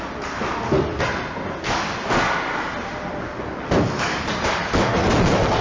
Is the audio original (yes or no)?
yes